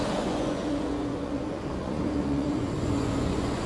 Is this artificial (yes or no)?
yes